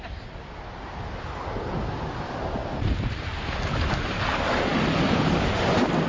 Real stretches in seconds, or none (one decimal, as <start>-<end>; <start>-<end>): 0.0-6.1